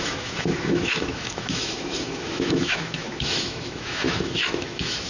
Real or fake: fake